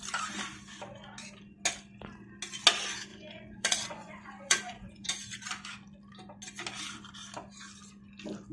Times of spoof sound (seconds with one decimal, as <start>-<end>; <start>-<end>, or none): 3.1-5.1